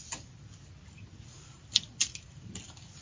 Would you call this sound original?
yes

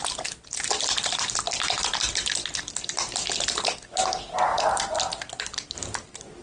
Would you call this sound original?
yes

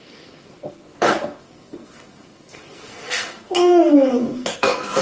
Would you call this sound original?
no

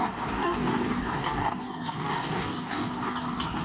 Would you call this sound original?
no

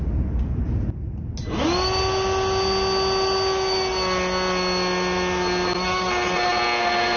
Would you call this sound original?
yes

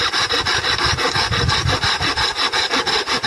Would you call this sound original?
yes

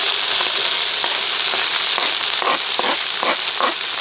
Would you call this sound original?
yes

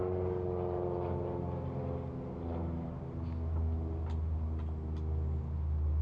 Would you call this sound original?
yes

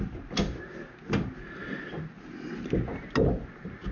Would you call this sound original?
yes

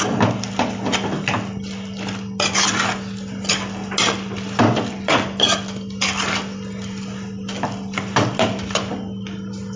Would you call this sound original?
yes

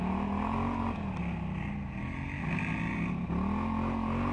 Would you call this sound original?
yes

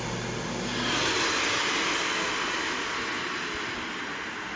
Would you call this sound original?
yes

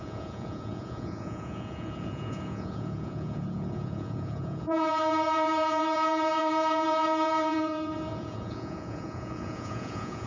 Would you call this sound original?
no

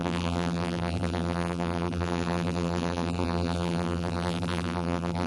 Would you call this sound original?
no